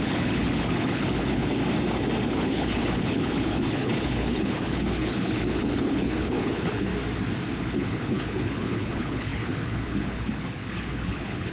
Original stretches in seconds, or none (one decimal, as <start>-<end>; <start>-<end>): 1.6-2.3; 6.9-7.6